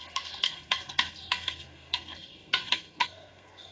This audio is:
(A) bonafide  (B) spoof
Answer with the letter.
B